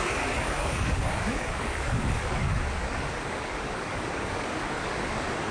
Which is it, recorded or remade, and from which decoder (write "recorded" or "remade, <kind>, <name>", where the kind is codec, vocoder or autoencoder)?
remade, codec, DAC